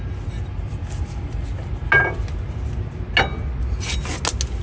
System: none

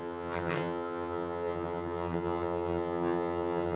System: vocoder, HiFi-GAN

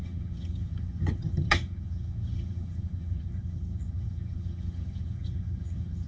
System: vocoder, HiFi-GAN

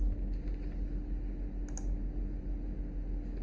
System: none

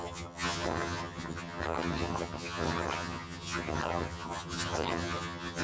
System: vocoder, HiFi-GAN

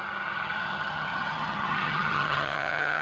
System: vocoder, HiFi-GAN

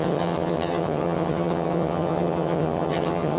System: vocoder, HiFi-GAN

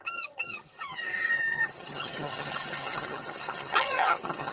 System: vocoder, HiFi-GAN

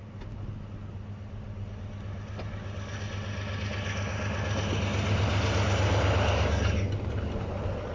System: none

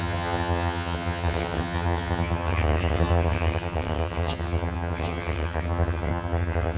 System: vocoder, HiFi-GAN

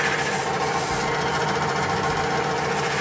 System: none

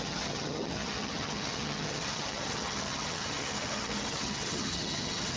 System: vocoder, HiFi-GAN